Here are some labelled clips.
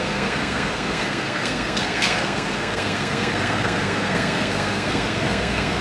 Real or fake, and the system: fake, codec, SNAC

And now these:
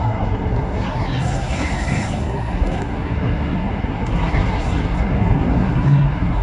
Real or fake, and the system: fake, codec, SNAC